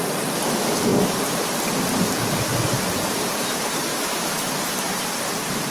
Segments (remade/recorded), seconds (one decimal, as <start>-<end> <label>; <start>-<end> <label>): 0.0-3.9 recorded; 3.9-4.5 remade; 4.5-5.7 recorded